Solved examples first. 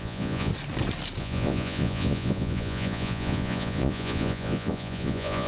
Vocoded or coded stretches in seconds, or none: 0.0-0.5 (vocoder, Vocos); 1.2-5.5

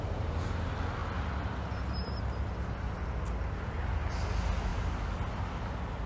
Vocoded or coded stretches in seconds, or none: none

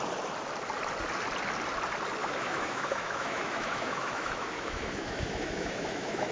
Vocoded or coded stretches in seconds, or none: 2.2-6.3 (autoencoder, DAC-VAE)

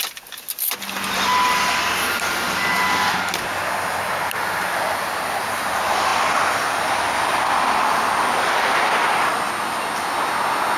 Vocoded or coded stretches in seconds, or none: none

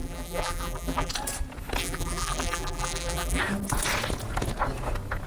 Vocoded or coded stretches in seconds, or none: 0.0-1.1 (vocoder, BigVGAN v2); 1.8-3.4

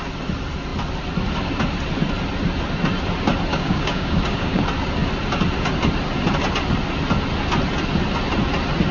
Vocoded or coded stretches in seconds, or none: 3.5-4.6 (codec, DAC)

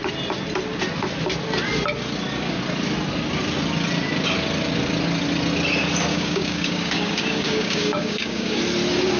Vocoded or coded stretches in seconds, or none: 6.1-8.6 (codec, DAC)

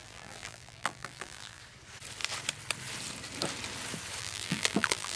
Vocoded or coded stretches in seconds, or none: 0.0-1.6 (vocoder, BigVGAN v2); 4.2-5.2